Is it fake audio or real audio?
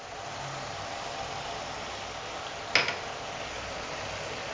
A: real